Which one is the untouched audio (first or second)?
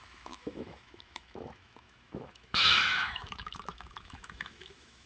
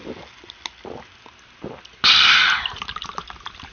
second